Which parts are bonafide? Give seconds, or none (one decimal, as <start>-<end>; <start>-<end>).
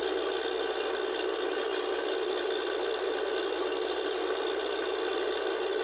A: 0.0-5.8